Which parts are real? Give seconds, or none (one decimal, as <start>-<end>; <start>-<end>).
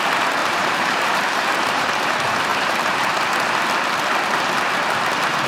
0.0-0.4; 2.1-2.5; 3.1-5.5